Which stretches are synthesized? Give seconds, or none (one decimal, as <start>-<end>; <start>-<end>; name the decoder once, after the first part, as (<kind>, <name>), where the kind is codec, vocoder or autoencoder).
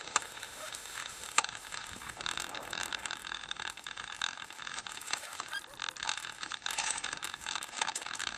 0.0-5.5 (autoencoder, DAC-VAE); 6.0-8.4